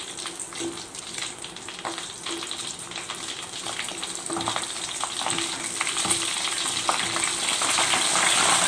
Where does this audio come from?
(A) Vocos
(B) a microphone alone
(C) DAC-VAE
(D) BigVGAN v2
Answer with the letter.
B